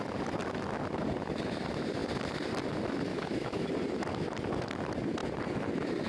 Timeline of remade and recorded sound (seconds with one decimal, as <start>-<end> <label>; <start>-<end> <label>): 0.0-3.1 recorded; 3.1-3.7 remade; 3.7-6.1 recorded

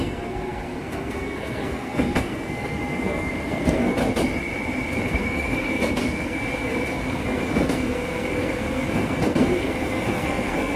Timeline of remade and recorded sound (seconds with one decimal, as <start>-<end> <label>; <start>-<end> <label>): 0.0-4.0 remade; 4.0-4.9 recorded; 4.9-10.8 remade

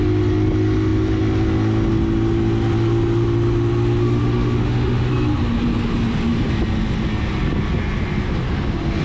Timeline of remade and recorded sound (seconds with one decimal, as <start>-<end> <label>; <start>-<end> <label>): 0.0-4.0 recorded; 4.0-5.1 remade; 5.1-9.0 recorded